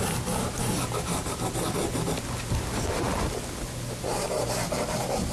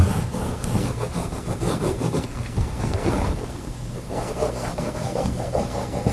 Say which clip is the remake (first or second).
second